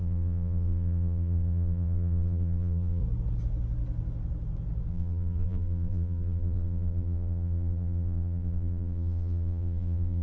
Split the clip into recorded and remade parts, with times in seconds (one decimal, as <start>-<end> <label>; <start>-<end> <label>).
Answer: 0.0-3.0 remade; 3.0-4.9 recorded; 4.9-10.2 remade